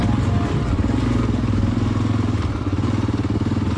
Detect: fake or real real